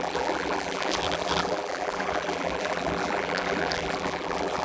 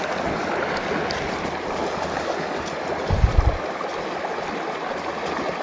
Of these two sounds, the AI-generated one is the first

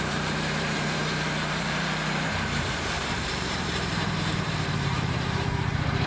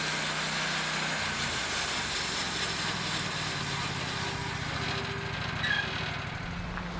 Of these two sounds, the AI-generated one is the first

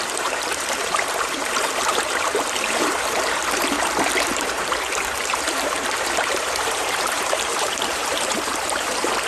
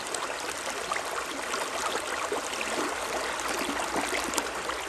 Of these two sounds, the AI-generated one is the first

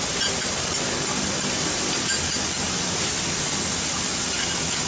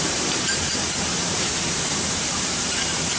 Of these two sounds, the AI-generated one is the second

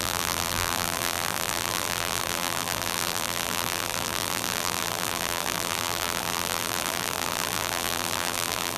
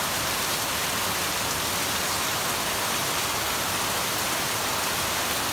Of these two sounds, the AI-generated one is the first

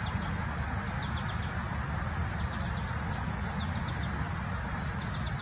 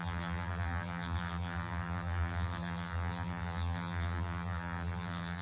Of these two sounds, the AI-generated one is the second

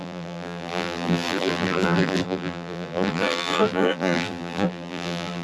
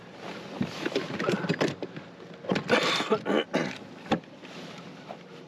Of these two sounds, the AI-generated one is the first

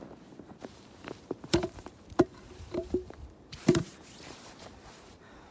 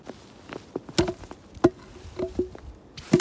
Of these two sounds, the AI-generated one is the first